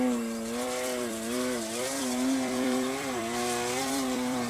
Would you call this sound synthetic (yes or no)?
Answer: yes